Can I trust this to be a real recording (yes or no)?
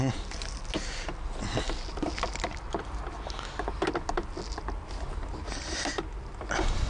yes